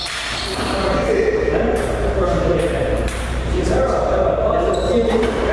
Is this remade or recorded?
remade